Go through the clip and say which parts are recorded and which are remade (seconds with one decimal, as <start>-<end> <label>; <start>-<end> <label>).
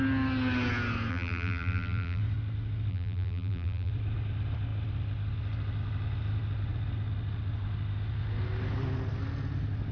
0.0-1.1 recorded; 1.1-2.2 remade; 2.2-2.9 recorded; 2.9-3.9 remade; 3.9-9.9 recorded